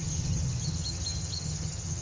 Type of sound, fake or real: fake